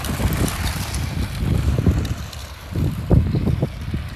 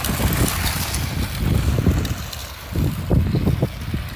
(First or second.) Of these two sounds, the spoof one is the first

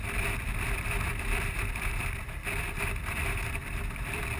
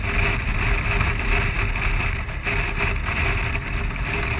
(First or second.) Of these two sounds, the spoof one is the first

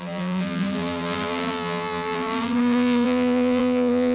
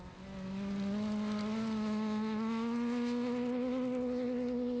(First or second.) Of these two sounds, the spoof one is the first